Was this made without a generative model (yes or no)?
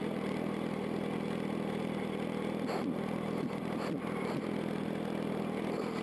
yes